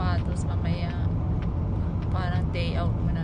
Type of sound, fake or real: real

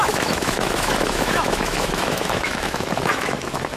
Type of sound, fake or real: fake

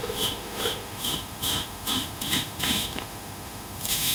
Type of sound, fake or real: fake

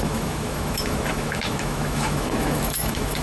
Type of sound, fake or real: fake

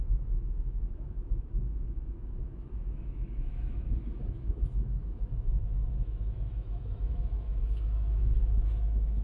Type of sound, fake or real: fake